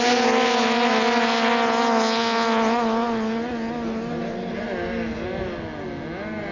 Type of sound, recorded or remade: recorded